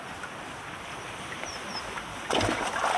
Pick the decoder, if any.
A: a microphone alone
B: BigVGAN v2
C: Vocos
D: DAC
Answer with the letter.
A